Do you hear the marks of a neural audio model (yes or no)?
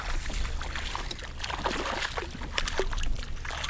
no